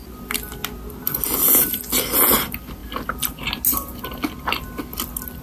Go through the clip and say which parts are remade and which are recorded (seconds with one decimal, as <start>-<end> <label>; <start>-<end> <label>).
0.0-5.4 recorded